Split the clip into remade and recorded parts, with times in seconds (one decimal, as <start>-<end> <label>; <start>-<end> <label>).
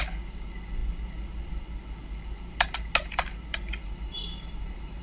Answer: 0.0-3.8 recorded; 3.8-5.0 remade